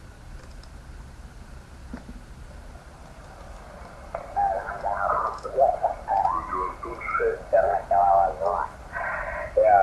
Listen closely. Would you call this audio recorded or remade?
recorded